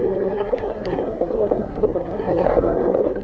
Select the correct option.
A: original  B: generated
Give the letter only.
B